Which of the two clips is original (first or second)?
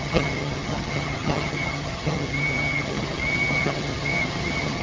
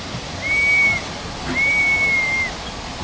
second